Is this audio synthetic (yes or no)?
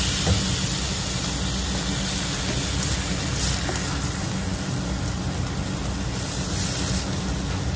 no